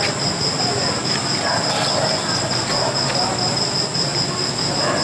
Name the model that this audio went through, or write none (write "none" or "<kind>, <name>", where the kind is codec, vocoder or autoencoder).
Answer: none